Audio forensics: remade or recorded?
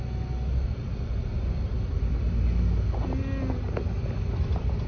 recorded